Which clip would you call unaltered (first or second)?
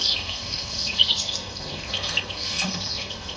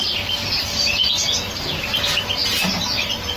second